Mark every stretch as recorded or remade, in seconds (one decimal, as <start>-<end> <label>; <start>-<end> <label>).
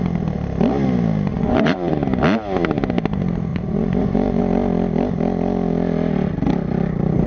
0.0-1.3 recorded; 1.3-1.9 remade; 1.9-3.5 recorded; 3.5-4.4 remade; 4.4-7.3 recorded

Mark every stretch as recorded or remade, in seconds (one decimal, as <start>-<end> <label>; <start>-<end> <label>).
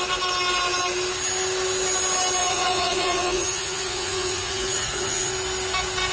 0.0-2.4 recorded; 2.4-5.3 remade; 5.3-6.1 recorded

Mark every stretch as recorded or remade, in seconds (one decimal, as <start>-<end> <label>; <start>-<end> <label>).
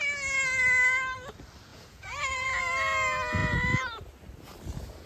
0.0-1.7 recorded; 1.7-2.6 remade; 2.6-5.1 recorded